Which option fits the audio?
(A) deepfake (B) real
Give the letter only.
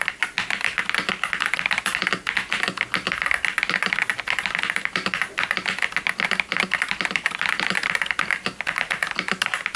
B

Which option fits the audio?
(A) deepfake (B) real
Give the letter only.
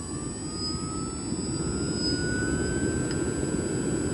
B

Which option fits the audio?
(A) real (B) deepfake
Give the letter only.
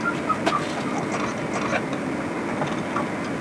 A